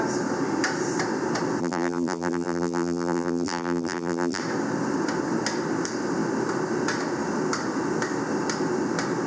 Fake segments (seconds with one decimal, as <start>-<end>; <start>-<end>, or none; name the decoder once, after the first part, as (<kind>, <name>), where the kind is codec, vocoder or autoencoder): 1.6-4.4 (vocoder, BigVGAN v2)